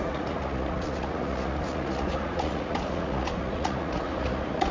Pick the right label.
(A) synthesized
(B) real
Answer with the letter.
A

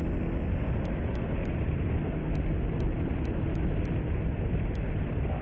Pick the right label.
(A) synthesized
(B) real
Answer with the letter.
B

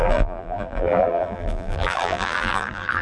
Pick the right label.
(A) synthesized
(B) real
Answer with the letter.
A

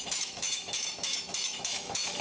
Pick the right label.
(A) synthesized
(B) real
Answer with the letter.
A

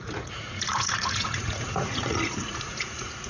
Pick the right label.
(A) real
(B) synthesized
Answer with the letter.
B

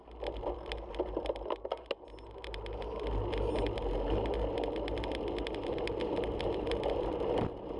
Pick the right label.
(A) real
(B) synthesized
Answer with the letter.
A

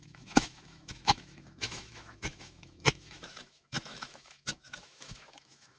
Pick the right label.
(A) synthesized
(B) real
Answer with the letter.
A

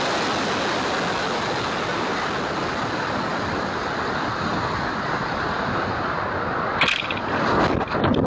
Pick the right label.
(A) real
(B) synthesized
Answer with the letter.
A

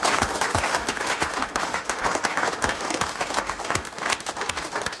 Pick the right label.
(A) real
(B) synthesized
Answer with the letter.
B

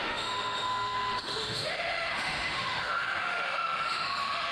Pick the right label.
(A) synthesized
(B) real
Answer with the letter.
A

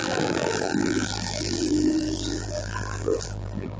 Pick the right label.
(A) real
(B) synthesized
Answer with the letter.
B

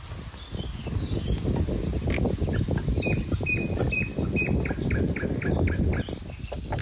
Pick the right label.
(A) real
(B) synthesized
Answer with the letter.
A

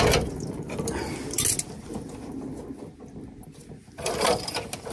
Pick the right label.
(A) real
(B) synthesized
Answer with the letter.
A